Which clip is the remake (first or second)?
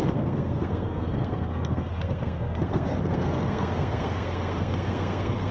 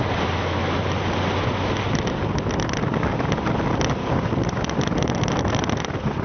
first